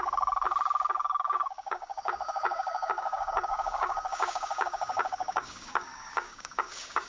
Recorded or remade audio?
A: remade